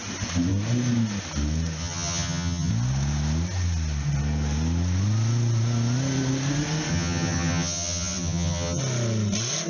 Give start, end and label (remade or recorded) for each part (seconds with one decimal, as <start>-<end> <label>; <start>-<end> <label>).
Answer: 0.0-1.8 recorded; 1.8-2.7 remade; 2.7-6.9 recorded; 6.9-8.8 remade; 8.8-9.7 recorded